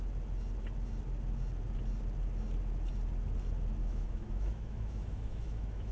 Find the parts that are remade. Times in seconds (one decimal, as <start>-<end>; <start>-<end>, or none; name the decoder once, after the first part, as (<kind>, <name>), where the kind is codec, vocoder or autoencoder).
3.8-5.9 (autoencoder, DAC-VAE)